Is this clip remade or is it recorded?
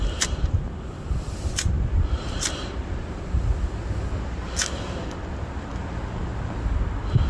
recorded